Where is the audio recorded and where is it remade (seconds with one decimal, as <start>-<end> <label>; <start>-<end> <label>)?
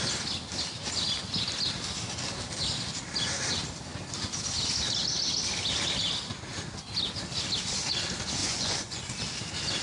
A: 0.0-8.4 recorded; 8.4-9.0 remade; 9.0-9.8 recorded